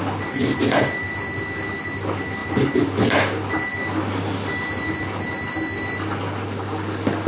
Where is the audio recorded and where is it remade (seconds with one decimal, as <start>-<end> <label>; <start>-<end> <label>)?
0.0-7.3 recorded